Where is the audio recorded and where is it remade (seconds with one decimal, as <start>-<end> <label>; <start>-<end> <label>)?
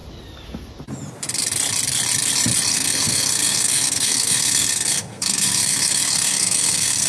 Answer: 0.0-2.7 recorded; 2.7-7.1 remade